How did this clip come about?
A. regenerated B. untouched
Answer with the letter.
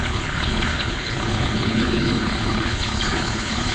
A